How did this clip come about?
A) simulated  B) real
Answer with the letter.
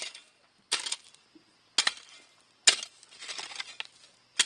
B